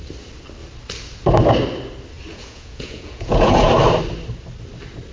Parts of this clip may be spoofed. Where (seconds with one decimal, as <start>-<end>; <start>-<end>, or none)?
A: 2.3-3.7

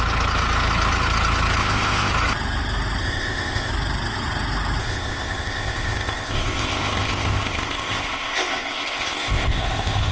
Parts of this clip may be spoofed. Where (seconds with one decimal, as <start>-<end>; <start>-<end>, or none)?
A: 1.6-2.1; 3.0-3.7; 4.8-10.1

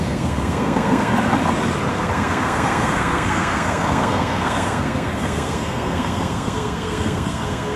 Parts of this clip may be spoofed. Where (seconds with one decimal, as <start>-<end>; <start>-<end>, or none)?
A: 0.0-1.1; 1.9-7.8